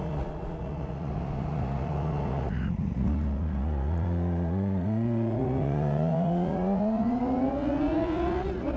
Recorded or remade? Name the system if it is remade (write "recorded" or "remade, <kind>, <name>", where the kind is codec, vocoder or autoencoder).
remade, vocoder, Vocos